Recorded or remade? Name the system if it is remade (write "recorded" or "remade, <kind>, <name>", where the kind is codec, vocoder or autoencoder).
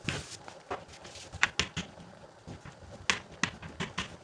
recorded